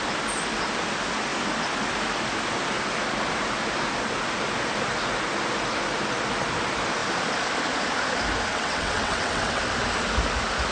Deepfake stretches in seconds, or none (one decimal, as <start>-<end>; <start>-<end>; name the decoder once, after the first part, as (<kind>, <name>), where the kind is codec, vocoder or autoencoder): 8.5-9.6 (vocoder, WaveNeXt)

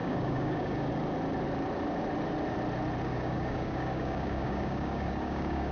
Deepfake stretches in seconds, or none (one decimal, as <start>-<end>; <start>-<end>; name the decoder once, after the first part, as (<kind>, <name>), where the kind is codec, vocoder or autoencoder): 0.0-0.9 (codec, DAC); 3.1-5.7

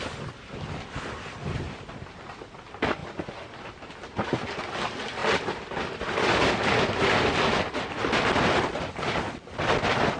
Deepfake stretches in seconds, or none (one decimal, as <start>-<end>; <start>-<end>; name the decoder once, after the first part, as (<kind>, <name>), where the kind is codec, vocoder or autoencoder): none